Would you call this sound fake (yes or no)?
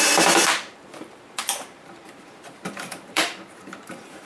yes